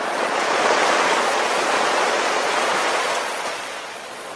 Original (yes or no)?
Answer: no